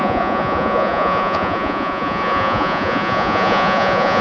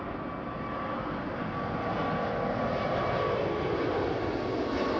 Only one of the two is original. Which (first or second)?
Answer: second